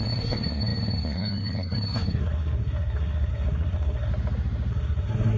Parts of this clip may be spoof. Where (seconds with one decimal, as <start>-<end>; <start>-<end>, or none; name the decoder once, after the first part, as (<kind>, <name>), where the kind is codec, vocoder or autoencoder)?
0.0-4.1 (codec, SNAC); 4.7-5.4